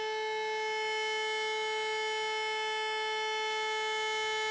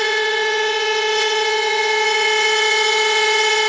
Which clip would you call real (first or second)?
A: first